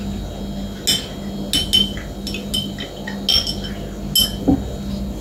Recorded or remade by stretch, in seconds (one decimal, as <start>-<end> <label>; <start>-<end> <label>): 0.0-5.2 recorded